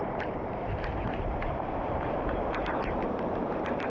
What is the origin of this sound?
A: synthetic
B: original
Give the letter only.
A